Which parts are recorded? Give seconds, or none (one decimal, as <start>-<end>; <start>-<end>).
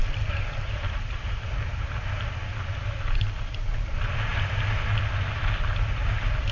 0.0-6.5